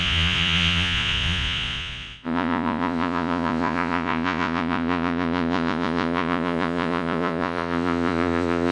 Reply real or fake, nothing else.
fake